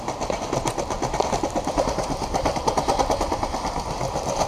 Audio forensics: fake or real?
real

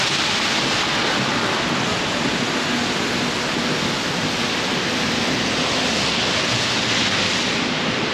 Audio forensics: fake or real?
real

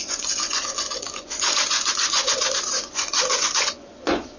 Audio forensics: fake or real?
fake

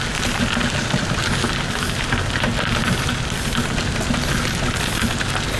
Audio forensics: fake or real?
real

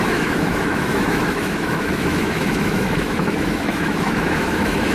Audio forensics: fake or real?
fake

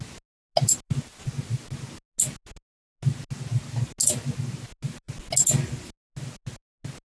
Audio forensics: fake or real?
real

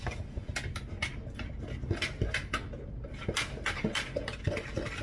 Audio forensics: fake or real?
real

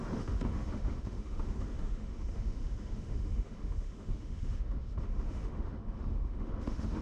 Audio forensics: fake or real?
fake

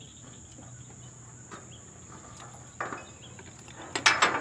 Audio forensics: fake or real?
real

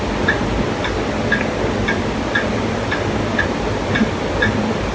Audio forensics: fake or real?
real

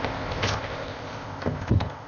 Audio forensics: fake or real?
fake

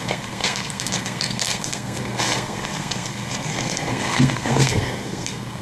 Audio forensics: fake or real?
fake